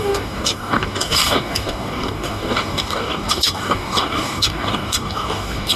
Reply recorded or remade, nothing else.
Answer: remade